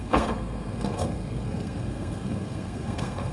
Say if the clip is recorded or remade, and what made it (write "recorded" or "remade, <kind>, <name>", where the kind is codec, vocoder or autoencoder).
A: remade, codec, SNAC